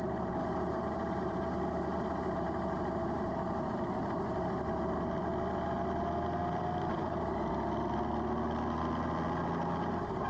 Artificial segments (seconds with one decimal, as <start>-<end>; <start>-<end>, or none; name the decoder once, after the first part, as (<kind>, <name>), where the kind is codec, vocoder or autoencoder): 0.4-5.2 (vocoder, BigVGAN v2); 6.4-8.0